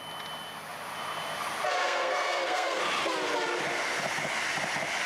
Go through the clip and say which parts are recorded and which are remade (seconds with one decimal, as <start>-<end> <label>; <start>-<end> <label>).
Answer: 0.0-1.8 recorded; 1.8-2.8 remade; 2.8-5.1 recorded